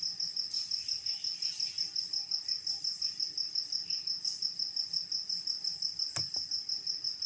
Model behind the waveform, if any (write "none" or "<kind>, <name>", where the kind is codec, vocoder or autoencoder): none